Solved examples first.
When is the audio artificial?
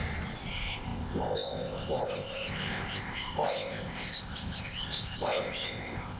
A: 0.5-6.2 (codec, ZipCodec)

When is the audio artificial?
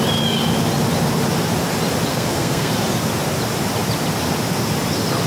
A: 2.1-2.7 (codec, SNAC)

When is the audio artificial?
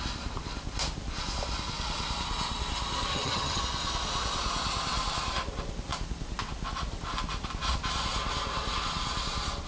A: 3.1-3.6 (vocoder, HiFi-GAN)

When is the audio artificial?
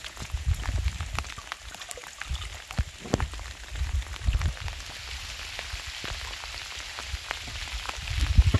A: 0.0-0.6 (vocoder, Vocos)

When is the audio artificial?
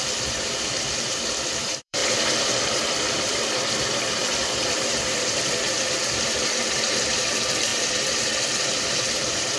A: 0.0-2.0 (vocoder, BigVGAN v2); 2.6-7.7; 8.3-9.6